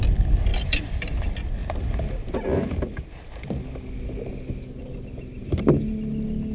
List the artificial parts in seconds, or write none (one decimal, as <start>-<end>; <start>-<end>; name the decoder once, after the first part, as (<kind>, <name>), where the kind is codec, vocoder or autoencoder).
0.5-1.1 (vocoder, BigVGAN v2)